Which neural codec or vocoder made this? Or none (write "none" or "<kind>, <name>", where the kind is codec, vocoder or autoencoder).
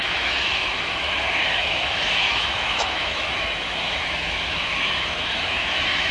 autoencoder, DAC-VAE